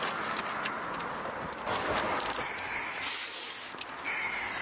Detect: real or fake real